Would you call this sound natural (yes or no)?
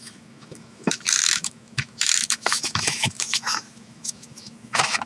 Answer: no